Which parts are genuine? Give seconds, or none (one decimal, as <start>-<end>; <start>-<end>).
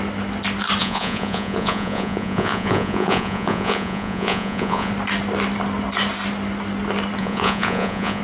0.0-0.8; 4.9-7.2